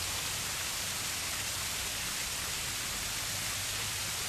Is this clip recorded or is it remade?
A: recorded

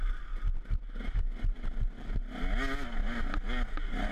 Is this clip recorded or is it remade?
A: recorded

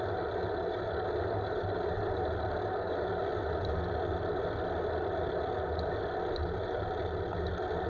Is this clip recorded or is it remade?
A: recorded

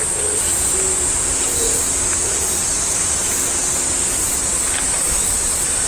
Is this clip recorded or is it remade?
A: recorded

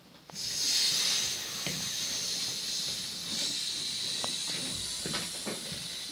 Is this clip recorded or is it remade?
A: recorded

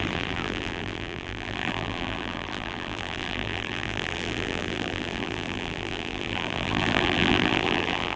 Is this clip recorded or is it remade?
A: remade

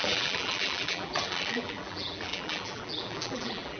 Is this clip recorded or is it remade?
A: remade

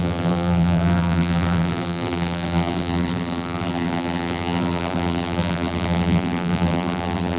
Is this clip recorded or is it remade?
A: remade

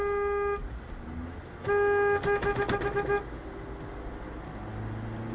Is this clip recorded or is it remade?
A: recorded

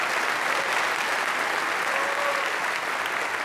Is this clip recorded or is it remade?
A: recorded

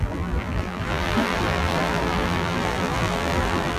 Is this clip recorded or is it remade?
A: remade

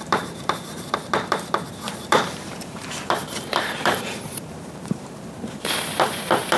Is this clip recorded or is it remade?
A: remade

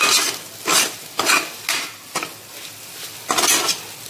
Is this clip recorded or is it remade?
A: recorded